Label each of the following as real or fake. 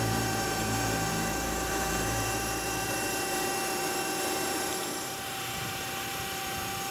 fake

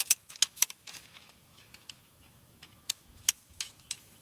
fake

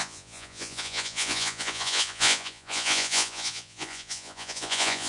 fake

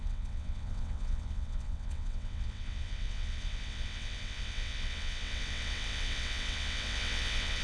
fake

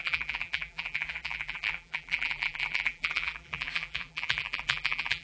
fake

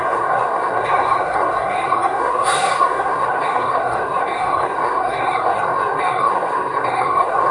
fake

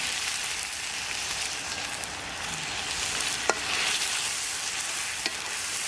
real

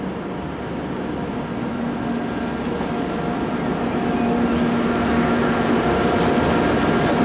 real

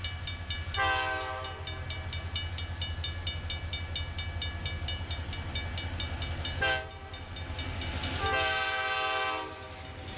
real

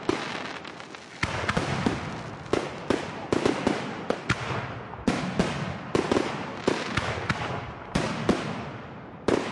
real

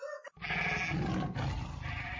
real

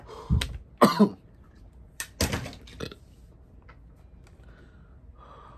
real